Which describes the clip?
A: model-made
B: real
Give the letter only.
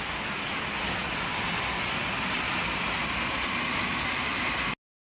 B